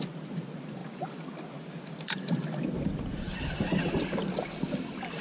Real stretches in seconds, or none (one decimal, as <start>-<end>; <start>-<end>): 0.0-5.2